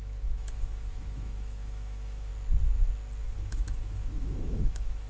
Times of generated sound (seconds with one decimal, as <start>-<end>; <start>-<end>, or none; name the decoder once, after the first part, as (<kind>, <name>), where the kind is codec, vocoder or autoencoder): 0.0-2.3 (autoencoder, DAC-VAE); 3.2-5.1